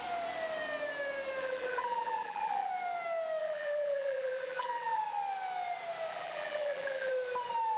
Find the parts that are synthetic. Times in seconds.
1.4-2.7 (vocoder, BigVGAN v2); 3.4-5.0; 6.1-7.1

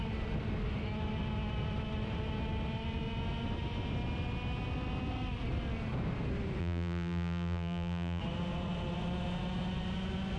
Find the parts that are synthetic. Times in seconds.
6.6-8.2 (vocoder, BigVGAN v2)

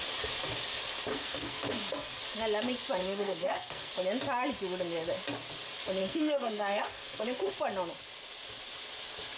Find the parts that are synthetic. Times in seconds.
1.1-2.1 (codec, SNAC); 3.0-3.9; 6.0-7.5